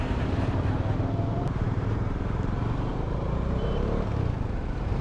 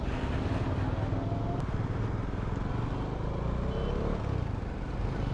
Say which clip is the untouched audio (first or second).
second